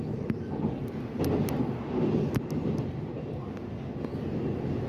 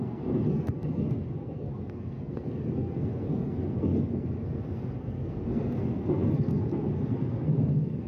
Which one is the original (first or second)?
first